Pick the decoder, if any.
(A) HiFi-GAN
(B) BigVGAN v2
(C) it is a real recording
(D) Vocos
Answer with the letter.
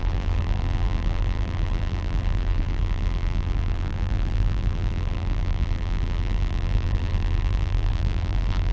B